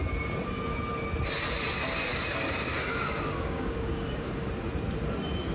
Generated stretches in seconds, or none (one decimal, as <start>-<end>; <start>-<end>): 2.1-4.5